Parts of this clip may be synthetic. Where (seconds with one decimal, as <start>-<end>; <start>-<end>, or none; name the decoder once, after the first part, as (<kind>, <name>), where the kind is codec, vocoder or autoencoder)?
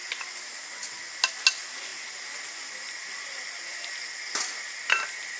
none